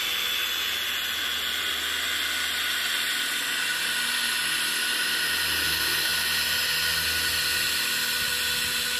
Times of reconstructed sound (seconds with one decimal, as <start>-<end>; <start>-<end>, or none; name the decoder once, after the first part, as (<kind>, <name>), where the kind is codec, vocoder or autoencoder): none